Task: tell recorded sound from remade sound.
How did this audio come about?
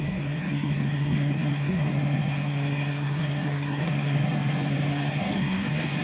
remade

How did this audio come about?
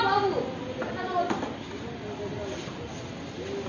recorded